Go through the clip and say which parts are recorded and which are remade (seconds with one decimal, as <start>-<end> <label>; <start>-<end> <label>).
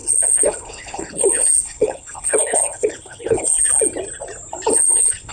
0.0-3.7 remade; 3.7-4.7 recorded; 4.7-5.3 remade